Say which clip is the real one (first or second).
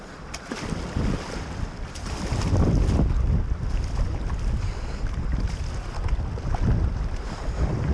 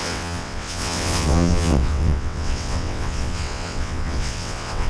first